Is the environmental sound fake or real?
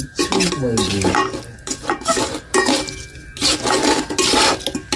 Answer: real